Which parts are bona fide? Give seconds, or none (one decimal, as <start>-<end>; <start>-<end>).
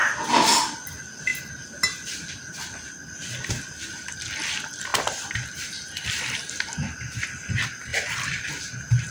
0.9-4.9; 6.5-7.9; 8.6-9.1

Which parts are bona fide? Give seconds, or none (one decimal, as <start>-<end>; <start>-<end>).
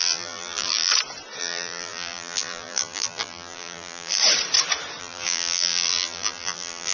0.9-1.4; 4.2-5.0